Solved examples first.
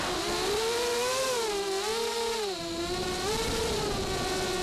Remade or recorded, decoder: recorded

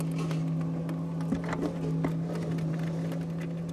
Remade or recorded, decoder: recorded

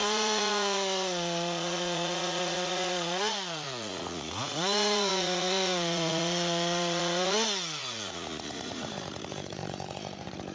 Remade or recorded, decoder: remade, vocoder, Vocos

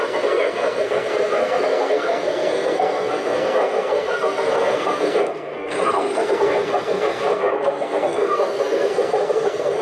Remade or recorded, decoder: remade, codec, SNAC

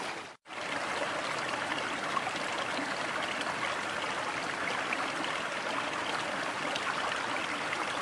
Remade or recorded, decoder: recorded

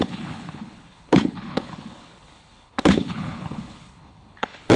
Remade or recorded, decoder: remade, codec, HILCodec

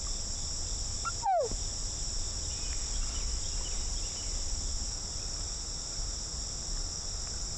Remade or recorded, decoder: recorded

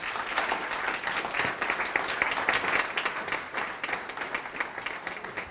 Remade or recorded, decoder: recorded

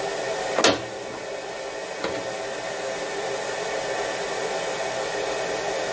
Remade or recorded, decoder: recorded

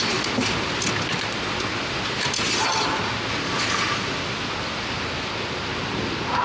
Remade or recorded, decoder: recorded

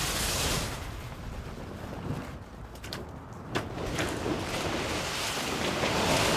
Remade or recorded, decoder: recorded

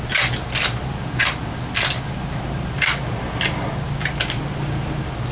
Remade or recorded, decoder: recorded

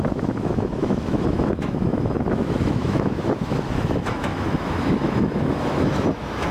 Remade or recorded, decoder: remade, autoencoder, DAC-VAE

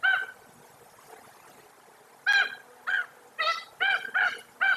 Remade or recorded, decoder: recorded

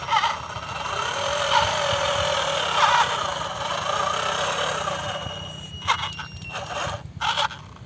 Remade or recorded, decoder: recorded